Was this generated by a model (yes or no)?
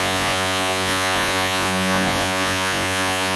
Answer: yes